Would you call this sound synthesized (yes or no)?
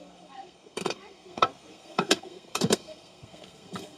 yes